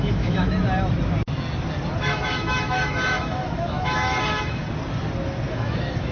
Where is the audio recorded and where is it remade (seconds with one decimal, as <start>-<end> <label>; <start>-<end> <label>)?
0.0-0.6 remade; 0.6-2.0 recorded; 2.0-4.6 remade; 4.6-5.5 recorded; 5.5-6.1 remade